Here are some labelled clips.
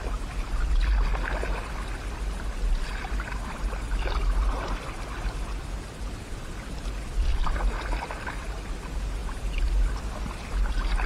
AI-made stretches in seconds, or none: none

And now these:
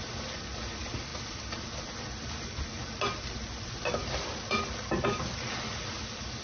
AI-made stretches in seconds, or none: none

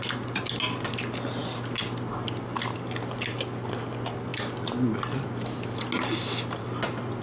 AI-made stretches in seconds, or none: none

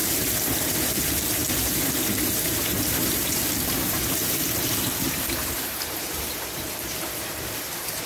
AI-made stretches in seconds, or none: 0.0-8.1 (vocoder, BigVGAN v2)

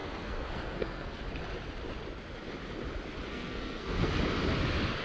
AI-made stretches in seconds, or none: 0.0-1.2 (codec, SNAC); 3.3-4.1

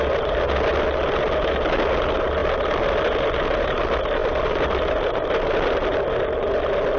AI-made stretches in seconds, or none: none

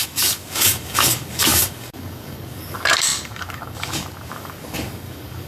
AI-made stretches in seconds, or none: 0.0-5.5 (codec, DAC)

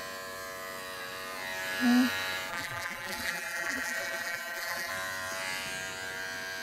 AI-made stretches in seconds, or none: 2.5-4.9 (vocoder, BigVGAN v2)